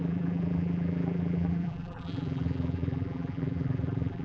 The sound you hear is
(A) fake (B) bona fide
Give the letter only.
A